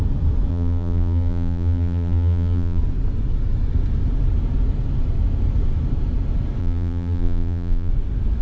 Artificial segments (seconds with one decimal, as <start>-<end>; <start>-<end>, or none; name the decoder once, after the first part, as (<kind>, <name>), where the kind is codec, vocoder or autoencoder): 0.5-2.8 (vocoder, BigVGAN v2); 6.6-7.9